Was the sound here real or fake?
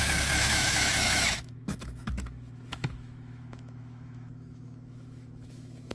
fake